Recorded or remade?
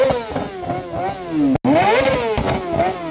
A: recorded